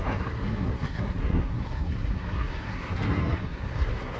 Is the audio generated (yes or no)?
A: yes